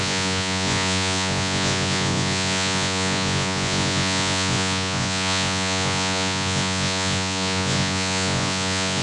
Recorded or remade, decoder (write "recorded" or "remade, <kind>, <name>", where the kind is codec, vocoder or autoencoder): remade, vocoder, Vocos